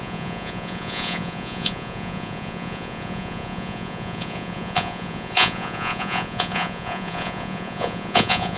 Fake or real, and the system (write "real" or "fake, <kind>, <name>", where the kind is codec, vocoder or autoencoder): fake, vocoder, Vocos